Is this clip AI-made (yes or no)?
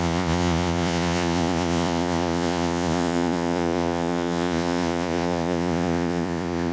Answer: yes